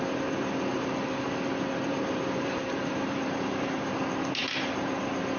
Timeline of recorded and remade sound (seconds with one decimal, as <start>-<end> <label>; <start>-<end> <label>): 0.0-0.7 recorded; 0.7-3.9 remade; 3.9-5.4 recorded